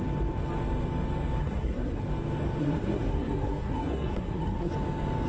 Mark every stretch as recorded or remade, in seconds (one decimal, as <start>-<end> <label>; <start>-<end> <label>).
0.0-1.4 recorded; 1.4-2.0 remade; 2.0-2.6 recorded; 2.6-4.7 remade; 4.7-5.3 recorded